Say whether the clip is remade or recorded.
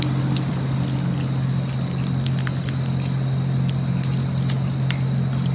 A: recorded